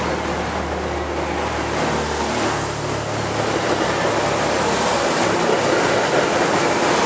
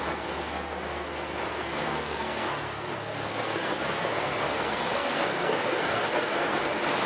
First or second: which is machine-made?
second